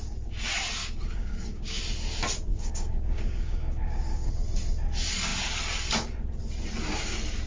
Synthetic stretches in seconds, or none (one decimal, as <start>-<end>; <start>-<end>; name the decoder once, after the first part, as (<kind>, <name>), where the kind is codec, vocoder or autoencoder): 0.8-1.8 (codec, DAC); 2.5-4.3